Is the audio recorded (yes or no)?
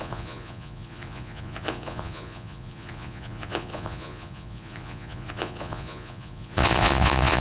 no